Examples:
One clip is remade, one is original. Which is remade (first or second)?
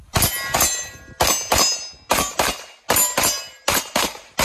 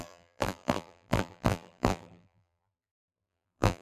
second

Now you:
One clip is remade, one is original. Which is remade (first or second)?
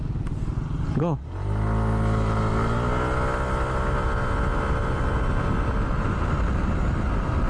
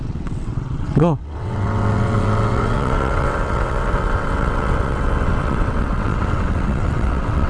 second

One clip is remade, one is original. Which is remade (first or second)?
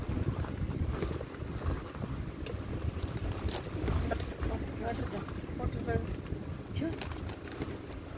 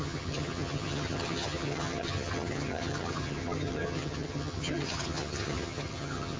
second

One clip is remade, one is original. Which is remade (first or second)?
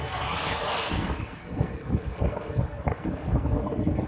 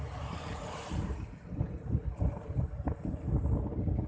first